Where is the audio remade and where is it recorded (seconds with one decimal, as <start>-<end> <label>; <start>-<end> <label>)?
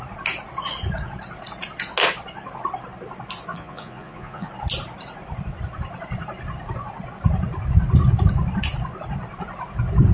0.0-3.5 recorded; 3.5-4.5 remade; 4.5-10.1 recorded